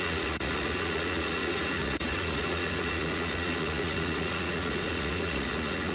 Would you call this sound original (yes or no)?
no